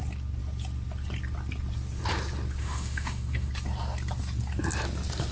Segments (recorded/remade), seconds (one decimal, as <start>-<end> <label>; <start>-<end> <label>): 0.0-2.6 recorded; 2.6-3.5 remade; 3.5-5.3 recorded